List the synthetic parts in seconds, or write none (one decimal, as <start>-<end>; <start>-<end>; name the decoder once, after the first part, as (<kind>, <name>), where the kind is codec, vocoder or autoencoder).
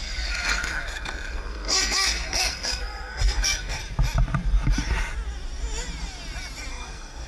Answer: 0.0-3.8 (codec, SNAC); 6.7-7.3